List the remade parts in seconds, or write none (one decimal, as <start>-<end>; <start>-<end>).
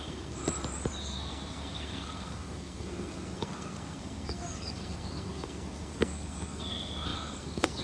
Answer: 0.0-0.4; 1.0-7.8